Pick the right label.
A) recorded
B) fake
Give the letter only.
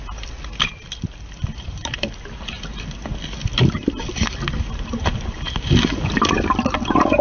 A